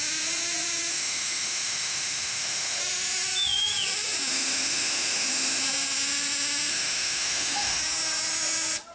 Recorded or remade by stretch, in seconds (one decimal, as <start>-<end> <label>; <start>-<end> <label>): 0.0-0.9 recorded; 0.9-2.8 remade; 2.8-4.3 recorded; 4.3-5.6 remade; 5.6-6.7 recorded; 6.7-7.8 remade; 7.8-8.9 recorded